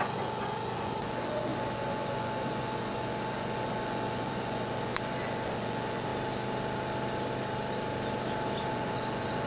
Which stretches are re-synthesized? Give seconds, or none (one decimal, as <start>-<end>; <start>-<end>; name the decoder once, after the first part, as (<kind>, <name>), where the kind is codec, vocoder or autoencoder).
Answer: 0.0-6.1 (vocoder, Vocos); 8.7-9.5